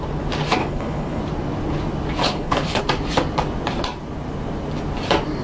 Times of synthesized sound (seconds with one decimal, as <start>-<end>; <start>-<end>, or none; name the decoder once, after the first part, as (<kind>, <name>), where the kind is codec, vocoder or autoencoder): 0.6-1.2 (codec, HILCodec); 2.2-2.8